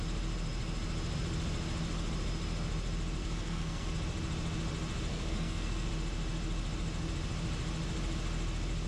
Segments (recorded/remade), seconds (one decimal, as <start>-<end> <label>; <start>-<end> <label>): 0.0-3.2 recorded; 3.2-3.9 remade; 3.9-5.1 recorded; 5.1-5.9 remade; 5.9-8.9 recorded